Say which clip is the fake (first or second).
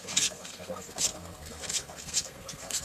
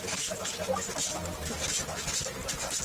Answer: first